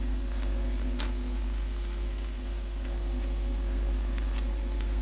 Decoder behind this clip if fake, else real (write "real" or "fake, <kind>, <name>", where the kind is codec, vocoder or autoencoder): fake, codec, SNAC